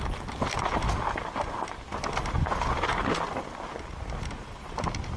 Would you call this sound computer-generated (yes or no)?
no